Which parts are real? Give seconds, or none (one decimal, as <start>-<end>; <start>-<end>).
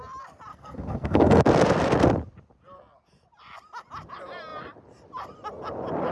0.0-0.5; 1.4-6.1